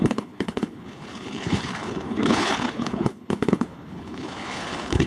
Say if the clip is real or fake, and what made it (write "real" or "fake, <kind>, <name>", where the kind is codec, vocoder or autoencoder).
fake, codec, HILCodec